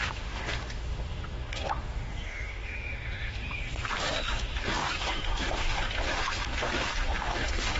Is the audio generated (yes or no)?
yes